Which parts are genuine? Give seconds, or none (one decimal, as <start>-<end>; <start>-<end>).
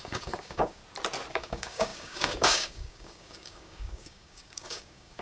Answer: 0.8-1.3